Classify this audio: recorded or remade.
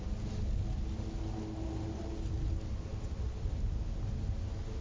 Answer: recorded